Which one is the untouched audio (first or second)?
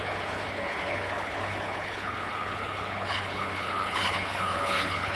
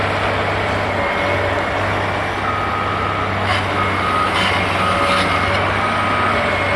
second